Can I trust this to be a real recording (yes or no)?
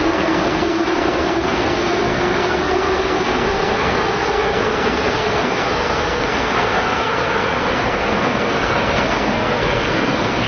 no